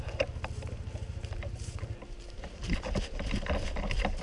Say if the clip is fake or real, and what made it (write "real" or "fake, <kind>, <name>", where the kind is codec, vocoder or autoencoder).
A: real